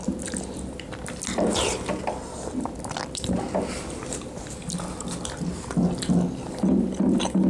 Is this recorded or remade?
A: recorded